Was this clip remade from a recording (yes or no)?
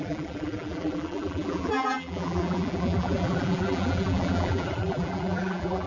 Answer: yes